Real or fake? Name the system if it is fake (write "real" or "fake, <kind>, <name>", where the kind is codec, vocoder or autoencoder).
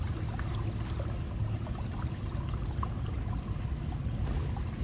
real